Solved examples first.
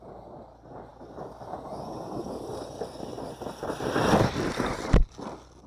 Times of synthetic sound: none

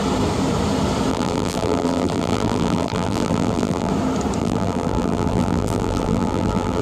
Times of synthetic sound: 1.1-3.9 (vocoder, BigVGAN v2); 4.4-6.8

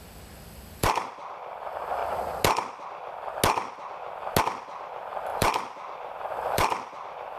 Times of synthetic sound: 0.0-2.0 (vocoder, BigVGAN v2); 4.4-7.4